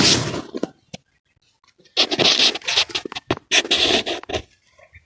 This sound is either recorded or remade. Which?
recorded